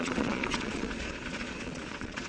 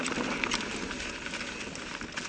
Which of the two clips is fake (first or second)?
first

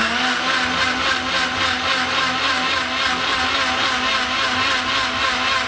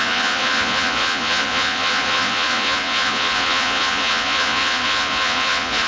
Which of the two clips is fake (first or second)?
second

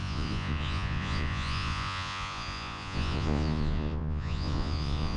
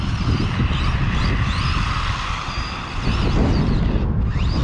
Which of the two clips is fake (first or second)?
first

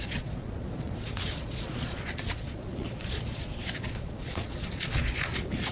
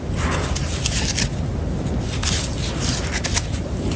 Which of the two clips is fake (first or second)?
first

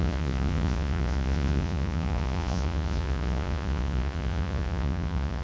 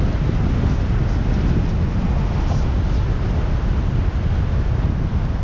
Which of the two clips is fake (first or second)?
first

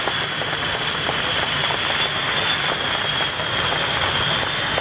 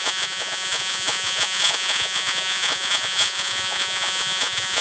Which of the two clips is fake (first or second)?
second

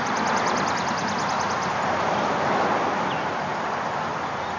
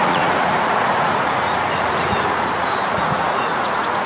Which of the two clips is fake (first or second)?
second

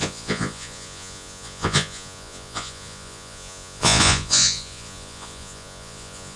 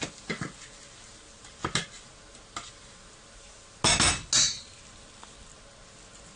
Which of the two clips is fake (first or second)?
first